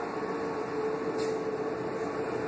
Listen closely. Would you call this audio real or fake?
real